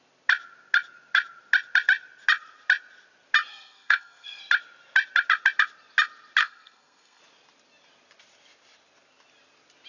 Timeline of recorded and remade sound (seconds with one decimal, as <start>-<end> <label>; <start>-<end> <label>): 0.0-3.5 recorded; 3.5-4.4 remade; 4.4-6.4 recorded; 6.4-7.2 remade; 7.2-9.9 recorded